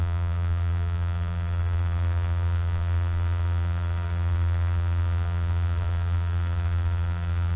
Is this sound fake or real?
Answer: fake